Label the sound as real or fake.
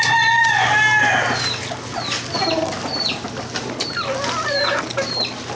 real